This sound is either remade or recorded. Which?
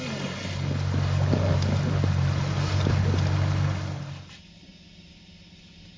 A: recorded